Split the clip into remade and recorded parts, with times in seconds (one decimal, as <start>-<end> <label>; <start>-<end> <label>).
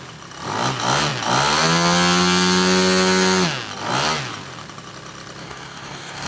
0.0-5.4 recorded; 5.4-6.3 remade